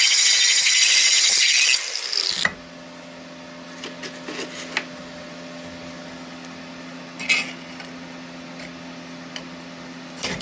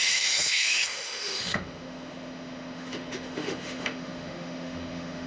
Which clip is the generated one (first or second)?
second